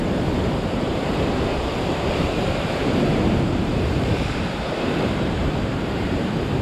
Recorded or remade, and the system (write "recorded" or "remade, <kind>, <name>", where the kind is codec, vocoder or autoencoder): remade, vocoder, BigVGAN v2